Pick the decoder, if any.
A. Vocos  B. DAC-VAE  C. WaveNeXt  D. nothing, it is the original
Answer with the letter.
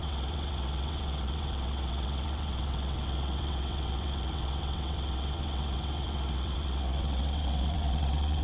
C